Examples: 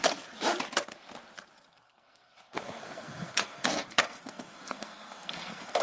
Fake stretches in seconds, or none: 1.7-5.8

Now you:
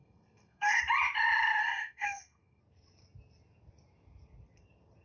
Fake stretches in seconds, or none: 0.0-0.8; 1.6-2.6

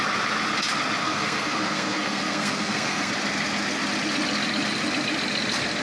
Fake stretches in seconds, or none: 1.0-3.1

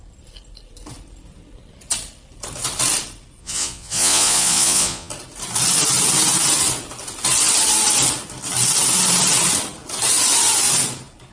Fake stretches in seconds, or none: 3.4-5.1

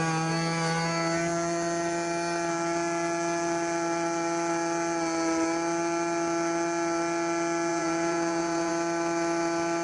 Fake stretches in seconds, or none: 7.7-8.7

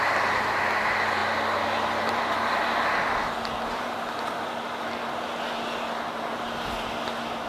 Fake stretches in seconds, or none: none